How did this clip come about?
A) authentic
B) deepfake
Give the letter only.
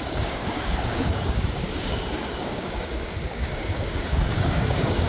B